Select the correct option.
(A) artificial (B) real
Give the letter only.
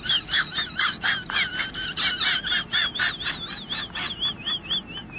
B